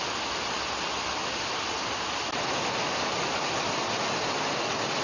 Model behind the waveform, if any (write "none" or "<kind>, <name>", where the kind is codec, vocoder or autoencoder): none